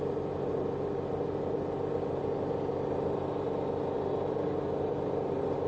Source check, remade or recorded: recorded